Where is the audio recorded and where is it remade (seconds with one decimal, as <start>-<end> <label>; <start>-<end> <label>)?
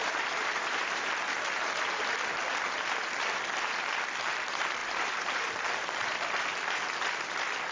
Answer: 0.0-1.1 remade; 1.1-4.8 recorded; 4.8-5.5 remade; 5.5-7.7 recorded